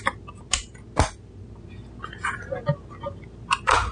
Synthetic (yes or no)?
no